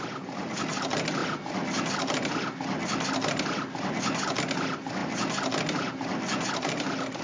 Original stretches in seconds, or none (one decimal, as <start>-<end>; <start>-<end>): 0.0-7.2